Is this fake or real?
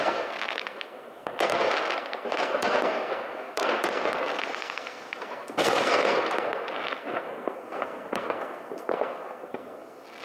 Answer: fake